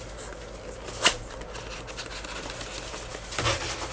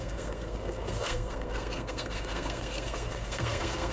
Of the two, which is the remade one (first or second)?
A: second